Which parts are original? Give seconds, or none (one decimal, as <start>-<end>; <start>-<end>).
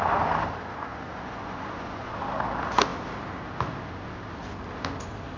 0.0-0.9; 2.1-5.4